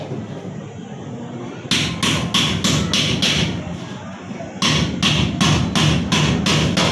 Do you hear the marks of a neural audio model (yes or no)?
no